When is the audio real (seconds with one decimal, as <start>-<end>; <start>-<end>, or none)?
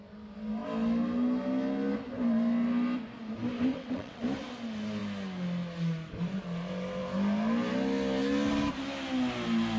0.0-3.7; 4.2-9.8